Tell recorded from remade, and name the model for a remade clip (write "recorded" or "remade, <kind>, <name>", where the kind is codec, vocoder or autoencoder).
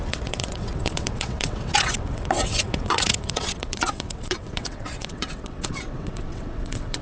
remade, vocoder, WaveNeXt